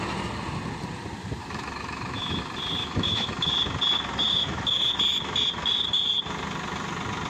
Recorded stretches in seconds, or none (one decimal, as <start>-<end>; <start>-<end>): 0.0-1.4; 2.4-2.8; 3.5-4.3; 4.9-7.3